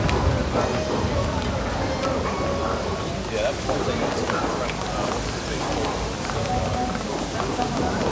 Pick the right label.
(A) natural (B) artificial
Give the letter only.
A